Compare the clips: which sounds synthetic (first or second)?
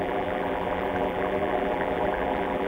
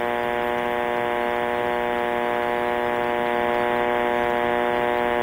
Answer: first